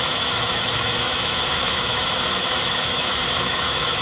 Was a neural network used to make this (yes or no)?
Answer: yes